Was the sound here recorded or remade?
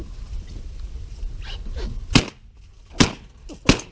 recorded